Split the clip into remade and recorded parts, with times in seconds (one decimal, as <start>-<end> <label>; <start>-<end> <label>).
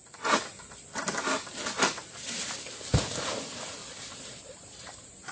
0.0-3.8 recorded; 3.8-5.3 remade